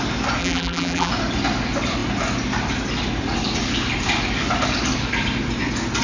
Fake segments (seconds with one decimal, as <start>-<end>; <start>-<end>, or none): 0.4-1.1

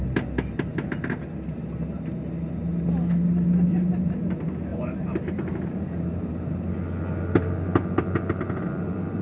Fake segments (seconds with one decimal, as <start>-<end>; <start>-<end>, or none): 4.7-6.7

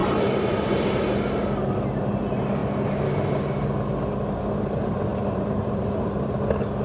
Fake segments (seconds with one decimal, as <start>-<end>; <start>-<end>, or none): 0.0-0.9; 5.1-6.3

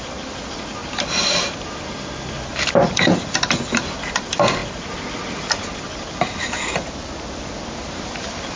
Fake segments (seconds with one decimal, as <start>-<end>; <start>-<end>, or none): 0.0-8.6

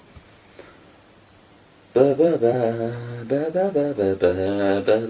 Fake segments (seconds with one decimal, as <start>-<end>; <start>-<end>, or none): 0.6-3.7; 4.3-5.1

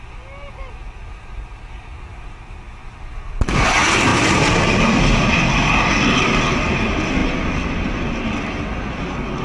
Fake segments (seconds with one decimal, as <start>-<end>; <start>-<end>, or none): 4.1-4.6

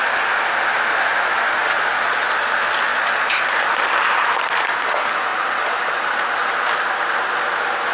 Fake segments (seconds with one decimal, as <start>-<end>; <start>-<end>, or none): 1.1-1.9; 2.9-3.8; 5.3-6.5